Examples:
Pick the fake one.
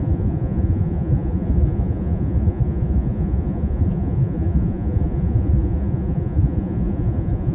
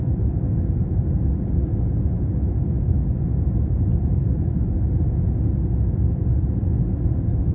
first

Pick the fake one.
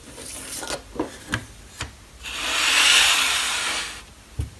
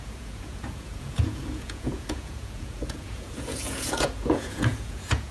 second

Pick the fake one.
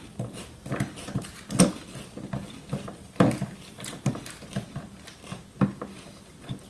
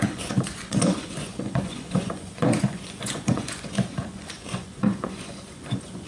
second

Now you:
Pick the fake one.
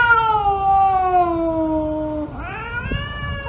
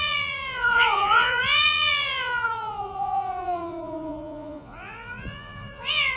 second